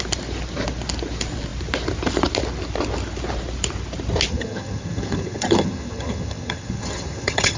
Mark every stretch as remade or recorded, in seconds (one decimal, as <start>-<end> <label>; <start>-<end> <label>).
0.0-4.3 recorded; 4.3-7.6 remade